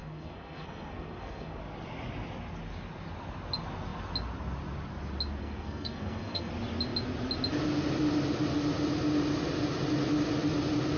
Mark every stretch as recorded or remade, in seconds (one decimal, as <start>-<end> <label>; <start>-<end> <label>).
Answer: 0.0-1.6 remade; 1.6-5.4 recorded; 5.4-6.5 remade; 6.5-11.0 recorded